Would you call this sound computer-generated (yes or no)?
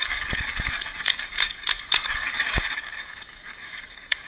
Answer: yes